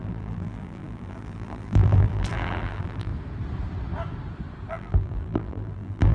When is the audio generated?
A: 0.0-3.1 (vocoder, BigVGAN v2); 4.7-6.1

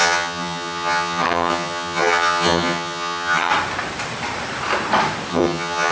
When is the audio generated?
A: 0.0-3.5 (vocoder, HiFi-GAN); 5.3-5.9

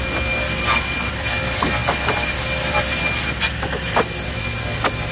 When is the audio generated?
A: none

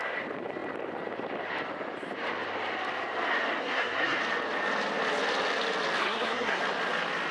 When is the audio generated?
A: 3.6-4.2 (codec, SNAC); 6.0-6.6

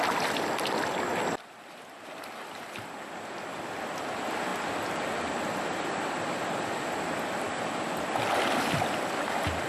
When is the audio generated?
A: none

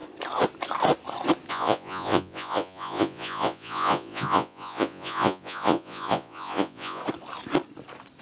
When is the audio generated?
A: 1.5-7.0 (vocoder, Vocos)

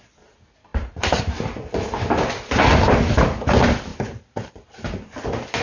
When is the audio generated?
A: 0.7-1.2 (vocoder, BigVGAN v2); 3.9-4.5